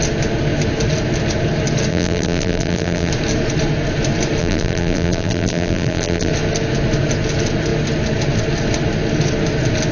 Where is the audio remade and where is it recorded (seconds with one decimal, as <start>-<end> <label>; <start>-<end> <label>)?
0.0-1.9 recorded; 1.9-3.1 remade; 3.1-4.4 recorded; 4.4-6.3 remade; 6.3-9.9 recorded